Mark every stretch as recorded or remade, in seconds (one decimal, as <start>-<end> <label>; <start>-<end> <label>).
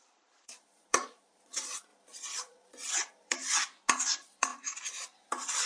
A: 0.0-3.4 remade; 3.4-3.9 recorded; 3.9-5.7 remade